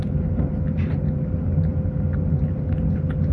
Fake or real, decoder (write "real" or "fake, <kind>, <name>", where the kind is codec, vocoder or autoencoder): real